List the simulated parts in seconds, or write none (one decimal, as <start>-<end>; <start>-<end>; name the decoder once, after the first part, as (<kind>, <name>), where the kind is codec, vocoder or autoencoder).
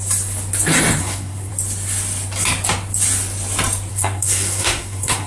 1.0-1.5 (codec, SNAC); 3.9-5.3